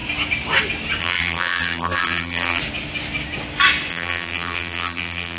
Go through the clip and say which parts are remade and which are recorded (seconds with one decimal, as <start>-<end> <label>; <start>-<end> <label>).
0.0-1.0 recorded; 1.0-2.6 remade; 2.6-3.9 recorded; 3.9-5.4 remade